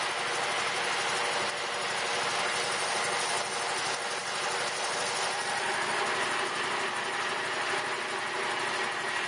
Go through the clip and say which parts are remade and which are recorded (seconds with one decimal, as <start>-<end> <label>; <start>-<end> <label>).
0.0-9.3 recorded